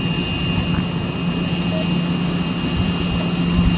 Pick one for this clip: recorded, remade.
recorded